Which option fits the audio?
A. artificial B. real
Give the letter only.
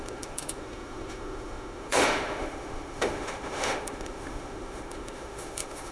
A